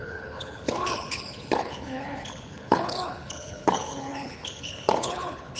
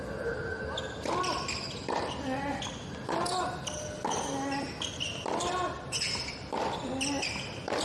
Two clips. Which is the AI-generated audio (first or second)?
first